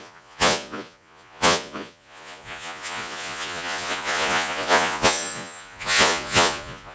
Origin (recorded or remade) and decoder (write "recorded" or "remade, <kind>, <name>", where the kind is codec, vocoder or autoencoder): remade, vocoder, Vocos